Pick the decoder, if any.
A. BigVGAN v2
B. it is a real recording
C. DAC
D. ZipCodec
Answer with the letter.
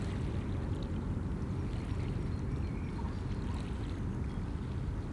B